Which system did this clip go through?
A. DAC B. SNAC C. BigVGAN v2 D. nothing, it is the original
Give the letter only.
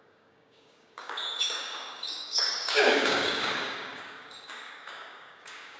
A